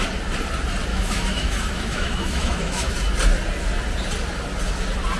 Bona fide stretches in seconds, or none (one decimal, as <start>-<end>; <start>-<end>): 0.0-0.9; 2.9-5.2